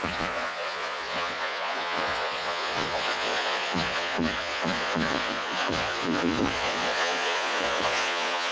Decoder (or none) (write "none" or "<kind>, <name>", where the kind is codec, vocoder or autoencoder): vocoder, Vocos